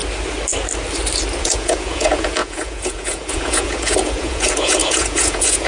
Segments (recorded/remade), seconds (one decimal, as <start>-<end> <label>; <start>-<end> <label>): 0.0-1.4 recorded; 1.4-5.7 remade